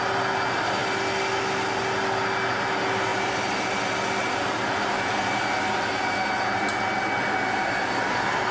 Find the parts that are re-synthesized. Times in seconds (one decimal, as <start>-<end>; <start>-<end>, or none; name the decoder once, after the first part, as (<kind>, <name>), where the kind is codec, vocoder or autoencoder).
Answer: none